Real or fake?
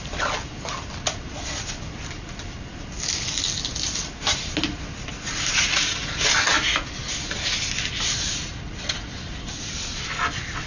real